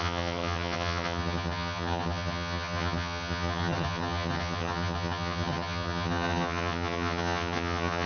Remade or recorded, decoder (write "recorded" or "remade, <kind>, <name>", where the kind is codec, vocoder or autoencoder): remade, vocoder, HiFi-GAN